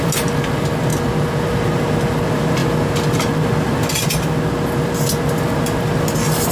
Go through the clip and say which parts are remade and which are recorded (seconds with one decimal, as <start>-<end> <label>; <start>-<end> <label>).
0.0-6.5 recorded